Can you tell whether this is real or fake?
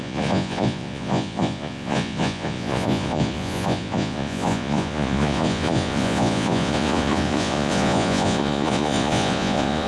fake